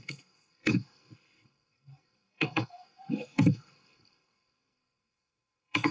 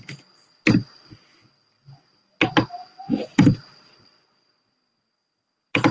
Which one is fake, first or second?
first